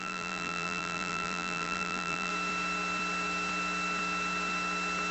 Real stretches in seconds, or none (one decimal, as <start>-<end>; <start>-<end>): 2.3-5.1